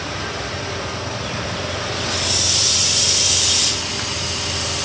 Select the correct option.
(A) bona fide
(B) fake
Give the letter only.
A